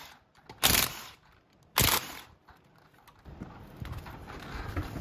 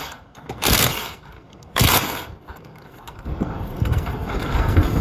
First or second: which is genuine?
first